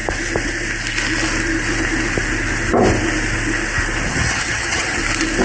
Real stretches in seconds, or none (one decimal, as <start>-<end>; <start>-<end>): 0.0-4.1; 5.0-5.4